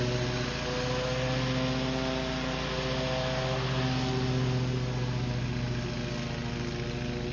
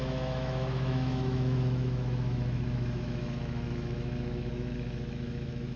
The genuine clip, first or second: first